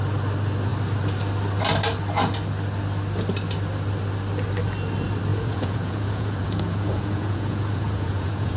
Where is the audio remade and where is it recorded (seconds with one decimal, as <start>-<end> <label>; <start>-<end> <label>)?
0.0-5.3 recorded; 5.3-8.6 remade